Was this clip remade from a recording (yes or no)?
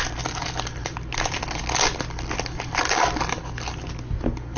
no